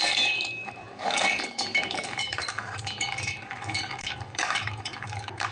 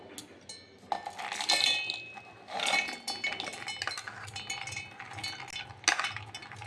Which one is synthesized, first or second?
first